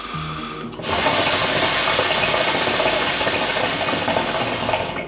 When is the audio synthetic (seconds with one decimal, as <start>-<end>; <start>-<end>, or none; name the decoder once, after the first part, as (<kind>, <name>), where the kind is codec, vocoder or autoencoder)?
none